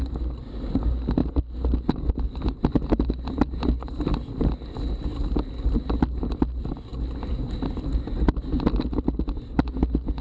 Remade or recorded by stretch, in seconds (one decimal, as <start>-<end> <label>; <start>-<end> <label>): 0.0-10.2 recorded